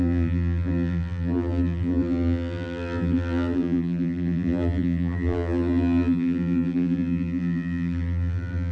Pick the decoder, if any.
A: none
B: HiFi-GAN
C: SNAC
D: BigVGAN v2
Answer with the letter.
D